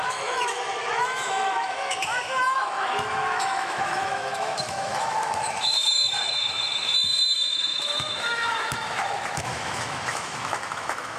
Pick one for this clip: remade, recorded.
remade